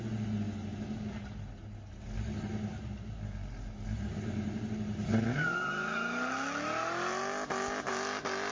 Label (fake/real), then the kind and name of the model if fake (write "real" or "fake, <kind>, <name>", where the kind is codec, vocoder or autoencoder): real